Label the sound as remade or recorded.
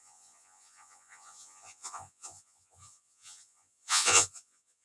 remade